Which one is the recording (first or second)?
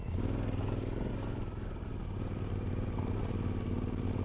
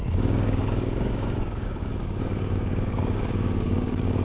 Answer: first